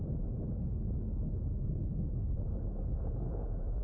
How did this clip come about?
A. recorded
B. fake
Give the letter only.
B